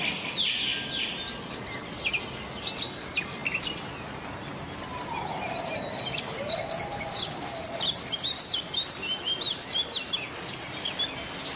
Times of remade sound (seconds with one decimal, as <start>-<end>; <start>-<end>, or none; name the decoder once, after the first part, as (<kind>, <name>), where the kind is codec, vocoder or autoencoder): none